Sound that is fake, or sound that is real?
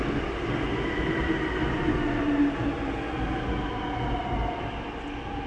real